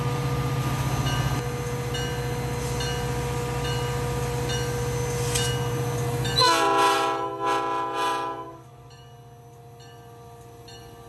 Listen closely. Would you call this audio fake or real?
real